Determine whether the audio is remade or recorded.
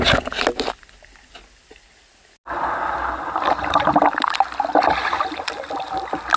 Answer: recorded